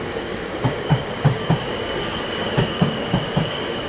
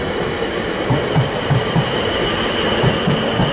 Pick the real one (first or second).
second